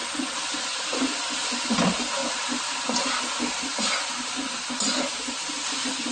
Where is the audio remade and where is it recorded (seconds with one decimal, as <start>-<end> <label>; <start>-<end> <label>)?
0.0-1.6 remade; 1.6-2.2 recorded; 2.2-3.3 remade; 3.3-6.1 recorded